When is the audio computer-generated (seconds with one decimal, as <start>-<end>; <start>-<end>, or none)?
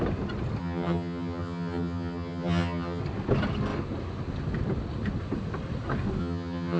0.6-3.0; 6.2-6.8